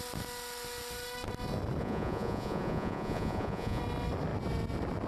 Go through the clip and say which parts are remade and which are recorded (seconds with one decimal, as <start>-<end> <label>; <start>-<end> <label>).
0.0-1.8 recorded; 1.8-3.8 remade; 3.8-5.1 recorded